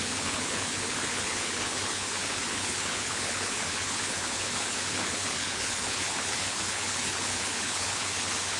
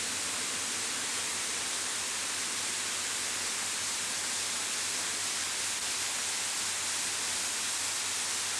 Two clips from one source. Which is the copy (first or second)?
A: first